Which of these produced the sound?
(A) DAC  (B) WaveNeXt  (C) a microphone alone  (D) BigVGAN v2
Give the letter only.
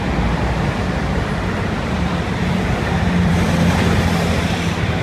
D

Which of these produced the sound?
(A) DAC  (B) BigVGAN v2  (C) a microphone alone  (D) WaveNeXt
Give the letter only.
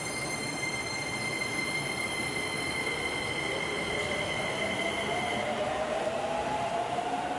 B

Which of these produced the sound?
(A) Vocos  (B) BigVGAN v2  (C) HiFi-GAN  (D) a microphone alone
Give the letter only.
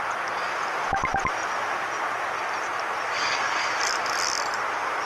D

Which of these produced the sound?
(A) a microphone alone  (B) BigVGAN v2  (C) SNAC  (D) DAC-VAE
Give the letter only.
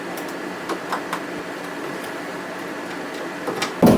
A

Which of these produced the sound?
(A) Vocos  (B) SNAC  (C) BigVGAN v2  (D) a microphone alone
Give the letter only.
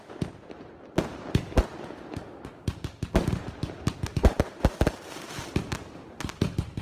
C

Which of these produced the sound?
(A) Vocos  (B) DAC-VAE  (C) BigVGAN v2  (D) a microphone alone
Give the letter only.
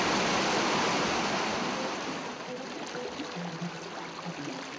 D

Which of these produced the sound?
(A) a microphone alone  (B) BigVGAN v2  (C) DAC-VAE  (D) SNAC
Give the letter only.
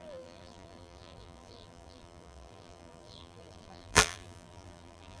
B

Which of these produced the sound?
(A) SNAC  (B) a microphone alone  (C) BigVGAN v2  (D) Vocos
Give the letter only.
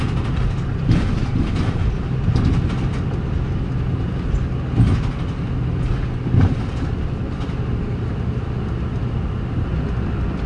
B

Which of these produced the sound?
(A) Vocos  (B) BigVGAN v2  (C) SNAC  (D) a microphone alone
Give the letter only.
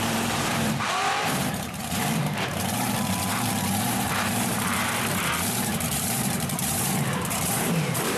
B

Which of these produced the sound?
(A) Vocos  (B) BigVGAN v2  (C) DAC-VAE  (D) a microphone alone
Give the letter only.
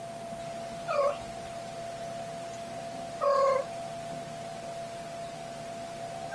D